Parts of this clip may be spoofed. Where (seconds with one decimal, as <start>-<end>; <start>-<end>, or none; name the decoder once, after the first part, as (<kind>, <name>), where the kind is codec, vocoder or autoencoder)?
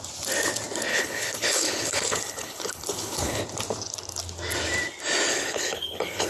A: 0.9-3.4 (codec, HILCodec); 5.3-6.3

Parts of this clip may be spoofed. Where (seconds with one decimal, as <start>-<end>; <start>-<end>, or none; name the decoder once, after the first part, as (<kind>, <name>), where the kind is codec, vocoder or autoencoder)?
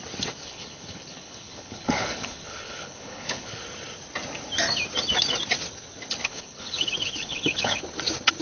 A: 0.4-3.6 (codec, HILCodec); 6.2-7.8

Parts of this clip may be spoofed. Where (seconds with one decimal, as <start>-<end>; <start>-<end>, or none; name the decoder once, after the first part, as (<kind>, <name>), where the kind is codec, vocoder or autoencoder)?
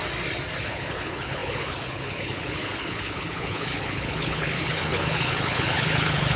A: 0.6-6.4 (codec, HILCodec)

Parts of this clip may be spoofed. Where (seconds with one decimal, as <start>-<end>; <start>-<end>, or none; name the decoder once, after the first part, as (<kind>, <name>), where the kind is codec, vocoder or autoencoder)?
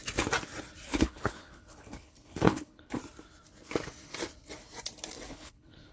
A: 0.9-3.0 (codec, HILCodec); 5.3-5.9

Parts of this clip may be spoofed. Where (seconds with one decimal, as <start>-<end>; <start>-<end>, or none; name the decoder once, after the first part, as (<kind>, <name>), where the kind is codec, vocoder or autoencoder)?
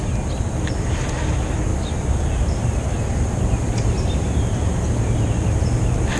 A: none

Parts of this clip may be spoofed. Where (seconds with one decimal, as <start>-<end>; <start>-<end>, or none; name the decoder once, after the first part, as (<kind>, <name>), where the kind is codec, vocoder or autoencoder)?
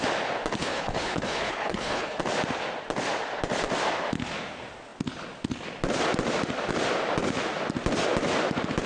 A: 0.6-2.2 (codec, HILCodec)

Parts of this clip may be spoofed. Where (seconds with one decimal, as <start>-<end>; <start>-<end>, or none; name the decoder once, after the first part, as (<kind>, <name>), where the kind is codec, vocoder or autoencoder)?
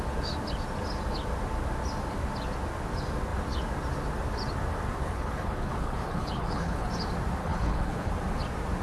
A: 5.0-6.9 (codec, HILCodec); 7.4-8.1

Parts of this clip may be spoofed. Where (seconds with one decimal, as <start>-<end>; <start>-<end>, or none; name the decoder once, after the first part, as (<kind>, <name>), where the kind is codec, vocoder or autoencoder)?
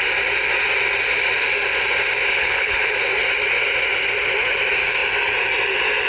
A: 2.3-2.9 (codec, HILCodec)